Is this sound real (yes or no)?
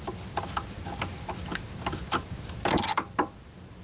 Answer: yes